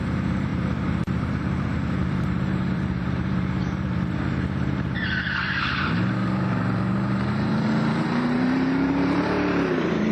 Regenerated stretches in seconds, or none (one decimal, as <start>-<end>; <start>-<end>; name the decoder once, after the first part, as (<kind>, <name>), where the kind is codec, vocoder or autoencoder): 0.0-10.1 (vocoder, BigVGAN v2)